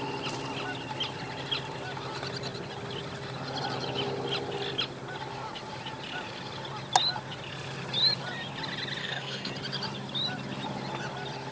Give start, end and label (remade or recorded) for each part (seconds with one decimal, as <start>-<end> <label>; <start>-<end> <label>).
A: 0.0-9.0 recorded; 9.0-9.5 remade; 9.5-11.5 recorded